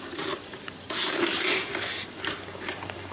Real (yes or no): yes